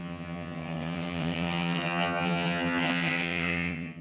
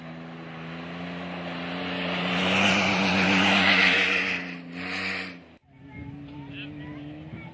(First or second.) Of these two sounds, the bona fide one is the second